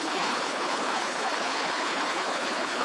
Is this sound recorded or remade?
remade